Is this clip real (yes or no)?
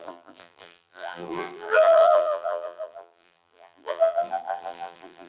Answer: no